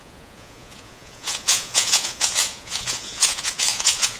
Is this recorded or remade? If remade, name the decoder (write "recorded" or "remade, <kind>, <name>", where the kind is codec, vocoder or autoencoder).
remade, vocoder, Vocos